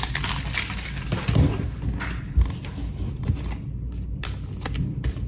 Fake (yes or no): no